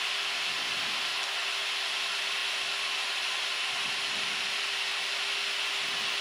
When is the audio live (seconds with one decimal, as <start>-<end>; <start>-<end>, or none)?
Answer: 0.0-6.2